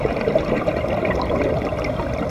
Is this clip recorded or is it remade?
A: recorded